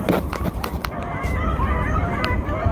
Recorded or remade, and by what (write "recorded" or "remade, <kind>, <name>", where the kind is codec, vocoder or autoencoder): recorded